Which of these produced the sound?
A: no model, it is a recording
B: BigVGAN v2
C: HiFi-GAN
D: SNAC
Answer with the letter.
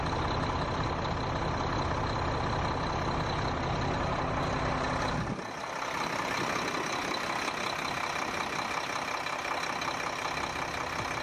A